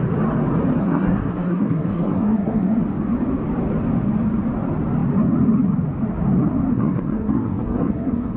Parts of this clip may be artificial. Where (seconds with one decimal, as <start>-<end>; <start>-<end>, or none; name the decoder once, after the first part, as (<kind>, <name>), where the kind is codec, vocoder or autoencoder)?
0.8-2.8 (codec, SNAC); 6.7-8.4